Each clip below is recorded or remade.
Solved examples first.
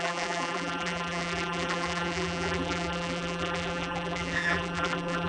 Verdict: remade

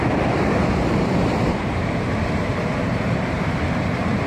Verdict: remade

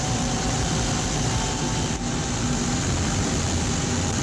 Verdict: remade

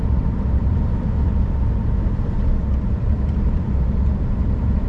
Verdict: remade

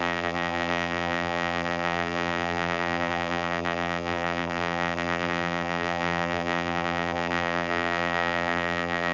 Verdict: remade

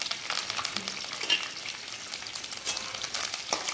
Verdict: recorded